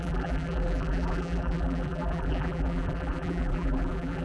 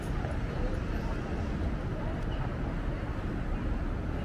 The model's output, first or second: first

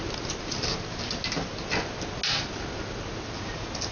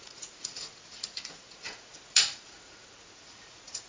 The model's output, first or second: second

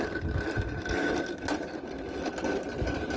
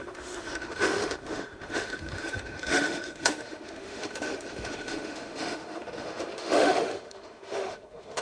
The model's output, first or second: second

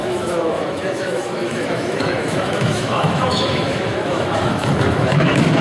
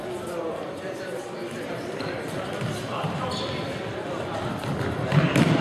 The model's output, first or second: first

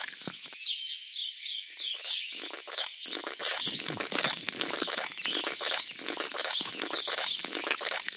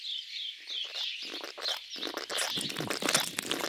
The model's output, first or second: first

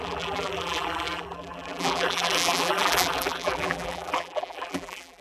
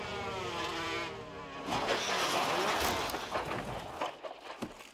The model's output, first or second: first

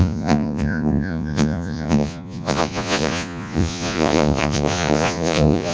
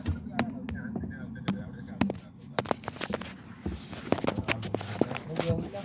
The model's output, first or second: first